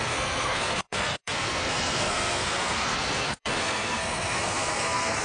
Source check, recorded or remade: remade